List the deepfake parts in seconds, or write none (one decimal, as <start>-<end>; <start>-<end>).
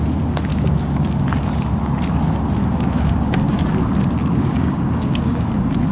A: 0.5-1.2; 2.6-3.6; 4.2-5.5